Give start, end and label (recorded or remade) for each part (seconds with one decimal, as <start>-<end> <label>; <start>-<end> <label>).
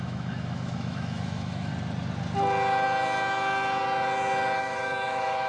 0.0-1.7 remade; 1.7-4.6 recorded; 4.6-5.5 remade